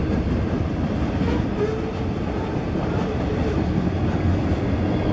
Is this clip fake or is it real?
real